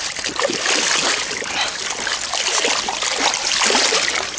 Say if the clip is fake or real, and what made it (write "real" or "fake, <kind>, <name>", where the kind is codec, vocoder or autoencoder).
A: real